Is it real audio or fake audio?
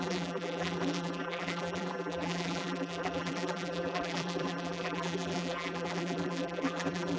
fake